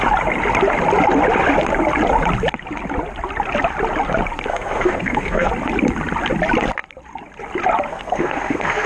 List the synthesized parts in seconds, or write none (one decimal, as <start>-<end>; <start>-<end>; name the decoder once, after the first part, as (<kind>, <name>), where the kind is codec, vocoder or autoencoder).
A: 4.5-5.5 (codec, SNAC); 7.9-8.9

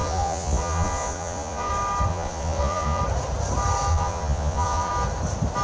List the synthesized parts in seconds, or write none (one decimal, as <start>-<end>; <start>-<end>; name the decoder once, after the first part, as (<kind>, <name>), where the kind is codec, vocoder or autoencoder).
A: 0.0-1.7 (vocoder, Vocos); 2.1-3.0; 3.9-4.9

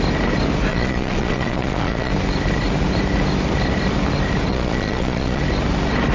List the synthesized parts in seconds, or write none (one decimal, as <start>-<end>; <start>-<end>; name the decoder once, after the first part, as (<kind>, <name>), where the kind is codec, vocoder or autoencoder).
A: 0.7-2.1 (vocoder, Vocos); 4.5-5.4